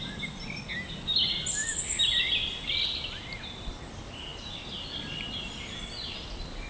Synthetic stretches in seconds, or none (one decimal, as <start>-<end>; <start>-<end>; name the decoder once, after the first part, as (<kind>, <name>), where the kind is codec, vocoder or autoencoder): none